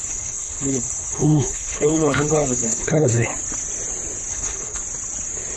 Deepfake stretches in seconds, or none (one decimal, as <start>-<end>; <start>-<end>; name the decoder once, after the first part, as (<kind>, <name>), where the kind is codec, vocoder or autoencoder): 0.0-3.3 (codec, HILCodec); 4.3-4.8